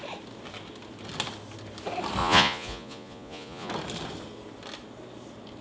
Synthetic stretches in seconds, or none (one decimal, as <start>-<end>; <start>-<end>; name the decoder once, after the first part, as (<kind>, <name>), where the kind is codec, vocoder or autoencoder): 2.2-3.7 (vocoder, Vocos)